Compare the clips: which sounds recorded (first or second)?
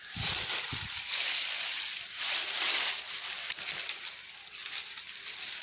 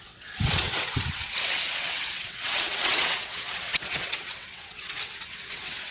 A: first